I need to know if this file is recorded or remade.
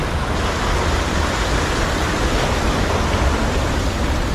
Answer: recorded